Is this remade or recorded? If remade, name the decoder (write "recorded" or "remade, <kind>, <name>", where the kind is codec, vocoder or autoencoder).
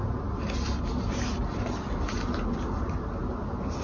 recorded